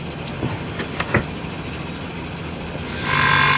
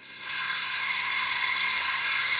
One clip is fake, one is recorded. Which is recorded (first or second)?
first